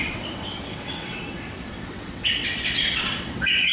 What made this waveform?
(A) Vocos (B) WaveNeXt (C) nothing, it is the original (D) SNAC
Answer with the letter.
B